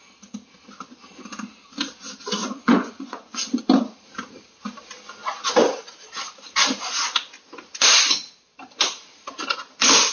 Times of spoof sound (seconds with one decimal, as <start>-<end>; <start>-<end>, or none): 2.4-3.6